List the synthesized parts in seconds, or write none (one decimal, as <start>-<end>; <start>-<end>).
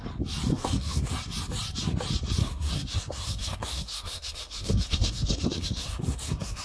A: 0.5-1.1; 2.4-6.6